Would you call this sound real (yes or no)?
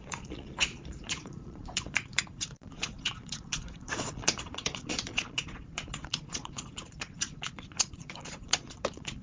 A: no